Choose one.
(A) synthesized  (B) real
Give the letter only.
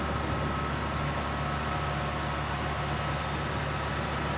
B